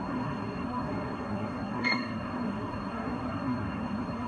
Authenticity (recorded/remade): remade